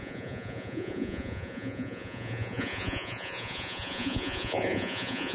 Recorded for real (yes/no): no